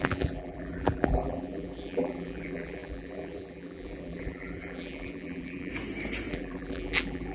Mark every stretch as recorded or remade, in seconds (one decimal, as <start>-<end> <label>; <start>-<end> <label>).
0.0-5.7 remade; 5.7-6.3 recorded; 6.3-7.3 remade